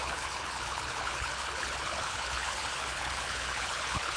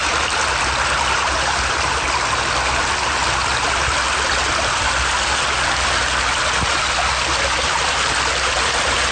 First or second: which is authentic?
second